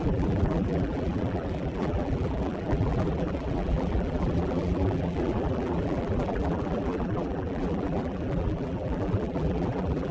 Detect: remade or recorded remade